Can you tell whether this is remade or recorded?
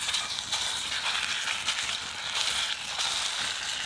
recorded